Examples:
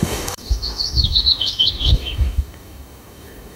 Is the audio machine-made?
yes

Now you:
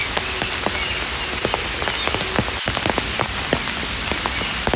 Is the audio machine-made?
no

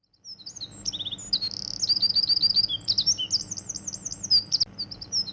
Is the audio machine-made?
no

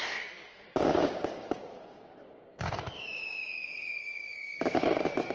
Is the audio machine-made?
yes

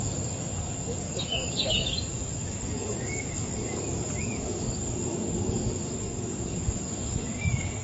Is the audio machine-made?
yes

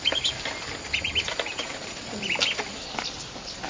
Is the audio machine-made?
no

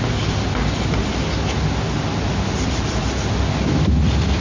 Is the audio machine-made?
no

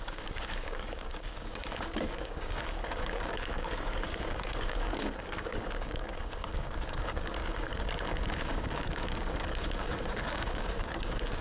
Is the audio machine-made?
yes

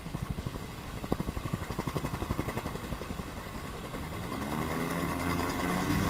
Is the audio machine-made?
yes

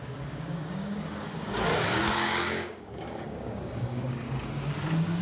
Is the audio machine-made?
yes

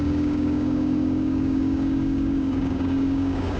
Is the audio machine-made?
yes